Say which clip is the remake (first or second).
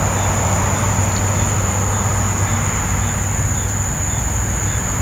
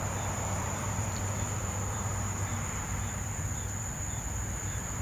second